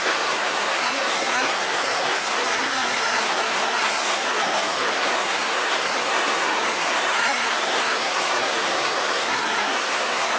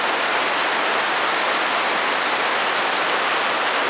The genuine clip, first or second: second